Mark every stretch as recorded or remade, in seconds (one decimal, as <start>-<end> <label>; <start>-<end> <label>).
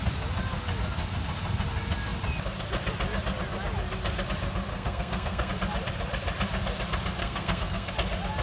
0.0-4.7 recorded; 4.7-5.5 remade; 5.5-7.2 recorded; 7.2-7.9 remade; 7.9-8.4 recorded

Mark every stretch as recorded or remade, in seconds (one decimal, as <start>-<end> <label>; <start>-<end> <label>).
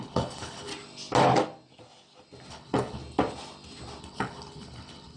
0.0-0.7 remade; 0.7-2.5 recorded; 2.5-3.0 remade; 3.0-4.0 recorded; 4.0-5.2 remade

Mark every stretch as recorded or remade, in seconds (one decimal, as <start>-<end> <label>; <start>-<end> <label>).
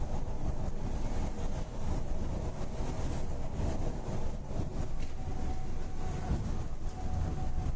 0.0-7.8 recorded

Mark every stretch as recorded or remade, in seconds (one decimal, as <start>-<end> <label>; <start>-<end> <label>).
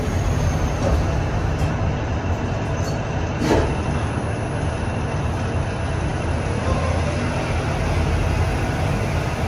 0.0-9.5 recorded